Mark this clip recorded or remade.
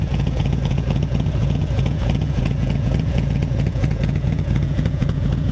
remade